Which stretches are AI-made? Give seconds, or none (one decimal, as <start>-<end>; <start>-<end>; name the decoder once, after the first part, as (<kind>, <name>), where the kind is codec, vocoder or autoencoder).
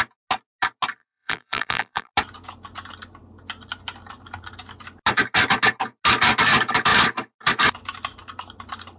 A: 1.0-2.1 (vocoder, BigVGAN v2)